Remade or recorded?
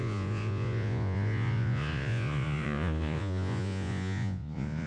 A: remade